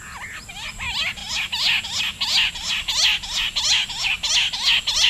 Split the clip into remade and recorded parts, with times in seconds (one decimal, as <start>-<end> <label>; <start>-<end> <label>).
0.0-5.1 recorded